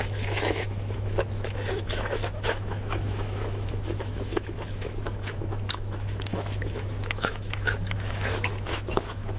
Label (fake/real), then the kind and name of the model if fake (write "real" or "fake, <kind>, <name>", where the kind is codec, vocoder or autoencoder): fake, autoencoder, DAC-VAE